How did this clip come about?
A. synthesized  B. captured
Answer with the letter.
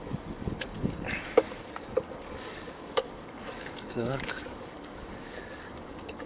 A